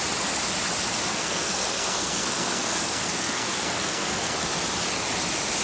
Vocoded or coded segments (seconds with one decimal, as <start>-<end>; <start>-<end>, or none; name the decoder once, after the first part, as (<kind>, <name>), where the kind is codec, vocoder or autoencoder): 1.1-4.5 (codec, SNAC)